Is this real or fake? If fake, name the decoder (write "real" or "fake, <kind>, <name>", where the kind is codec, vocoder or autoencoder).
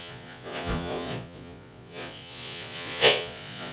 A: fake, vocoder, Vocos